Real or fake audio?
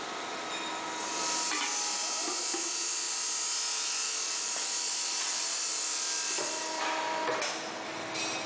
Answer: real